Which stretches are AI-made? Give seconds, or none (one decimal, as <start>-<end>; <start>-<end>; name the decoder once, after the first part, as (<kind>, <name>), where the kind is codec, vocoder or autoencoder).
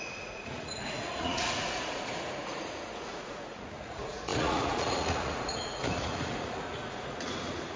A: 0.0-7.8 (vocoder, Vocos)